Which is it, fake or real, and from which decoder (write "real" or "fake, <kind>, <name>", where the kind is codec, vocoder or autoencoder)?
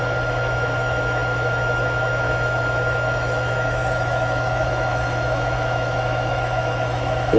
fake, autoencoder, DAC-VAE